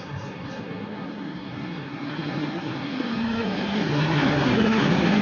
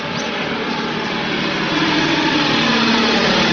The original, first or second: second